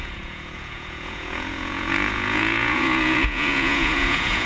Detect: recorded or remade remade